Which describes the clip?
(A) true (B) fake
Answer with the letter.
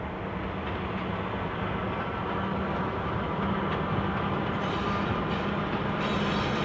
A